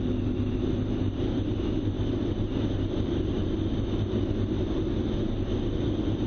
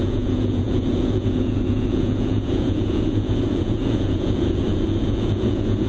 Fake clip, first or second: second